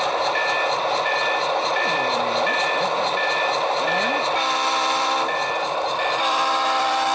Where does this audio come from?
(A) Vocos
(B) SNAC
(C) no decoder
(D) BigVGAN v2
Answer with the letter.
D